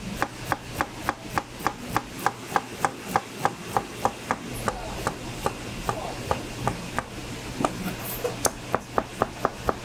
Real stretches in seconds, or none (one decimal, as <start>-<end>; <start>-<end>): 0.0-9.8